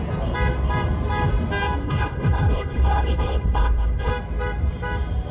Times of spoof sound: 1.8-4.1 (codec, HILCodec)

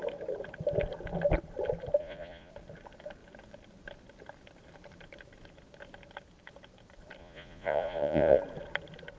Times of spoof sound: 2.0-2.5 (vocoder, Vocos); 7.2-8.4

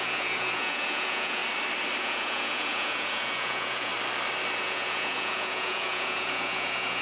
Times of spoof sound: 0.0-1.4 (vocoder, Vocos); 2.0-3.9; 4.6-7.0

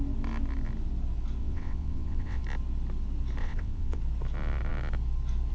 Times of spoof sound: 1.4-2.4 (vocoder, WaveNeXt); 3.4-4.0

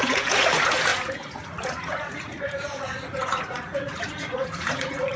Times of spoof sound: 0.0-5.2 (vocoder, Vocos)

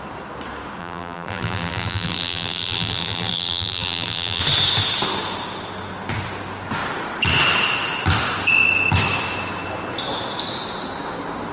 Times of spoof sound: 0.8-4.4 (vocoder, BigVGAN v2)